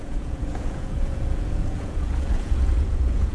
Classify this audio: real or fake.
fake